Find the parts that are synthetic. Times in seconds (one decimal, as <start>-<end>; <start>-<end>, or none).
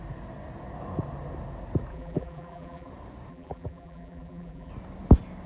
1.9-2.9; 3.3-4.7